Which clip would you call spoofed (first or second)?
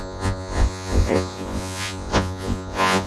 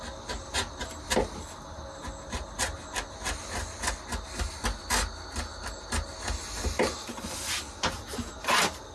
first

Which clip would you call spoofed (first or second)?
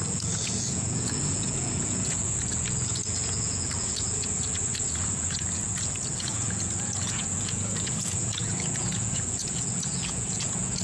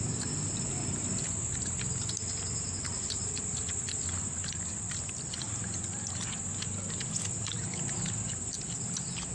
first